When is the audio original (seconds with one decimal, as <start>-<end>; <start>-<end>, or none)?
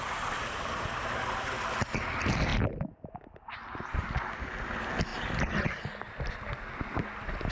0.0-7.5